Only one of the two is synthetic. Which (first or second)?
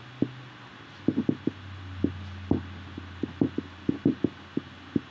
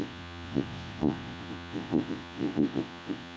second